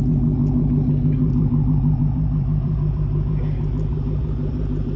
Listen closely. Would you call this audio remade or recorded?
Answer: remade